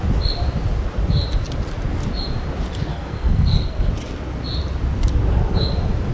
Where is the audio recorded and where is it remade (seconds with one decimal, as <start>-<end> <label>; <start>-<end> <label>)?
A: 0.0-2.9 recorded; 2.9-3.9 remade; 3.9-6.1 recorded